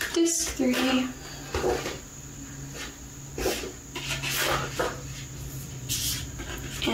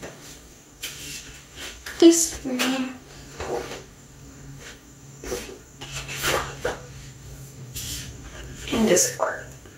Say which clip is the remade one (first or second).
second